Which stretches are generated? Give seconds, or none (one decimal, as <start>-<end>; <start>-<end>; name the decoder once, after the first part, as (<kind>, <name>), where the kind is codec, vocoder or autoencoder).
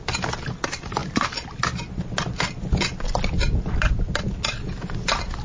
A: none